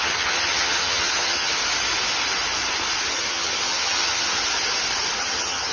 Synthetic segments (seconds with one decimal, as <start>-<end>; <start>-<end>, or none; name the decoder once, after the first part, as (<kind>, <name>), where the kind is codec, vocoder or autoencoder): 0.0-1.6 (vocoder, HiFi-GAN); 3.1-4.4; 5.2-5.7